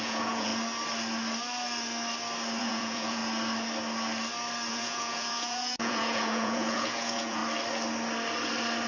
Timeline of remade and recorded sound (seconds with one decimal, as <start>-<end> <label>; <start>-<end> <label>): 0.0-0.5 remade; 0.5-2.6 recorded; 2.6-3.2 remade; 3.2-4.7 recorded; 4.7-7.4 remade; 7.4-8.9 recorded